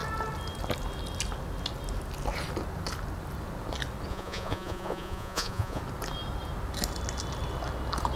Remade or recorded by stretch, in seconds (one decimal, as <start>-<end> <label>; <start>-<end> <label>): 0.0-4.1 recorded; 4.1-5.8 remade; 5.8-8.2 recorded